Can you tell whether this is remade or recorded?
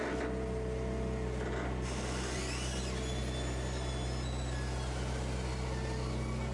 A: recorded